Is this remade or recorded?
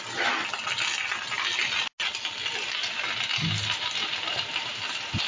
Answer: recorded